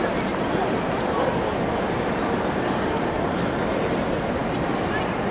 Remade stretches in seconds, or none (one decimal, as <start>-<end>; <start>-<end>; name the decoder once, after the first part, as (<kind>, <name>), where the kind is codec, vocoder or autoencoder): none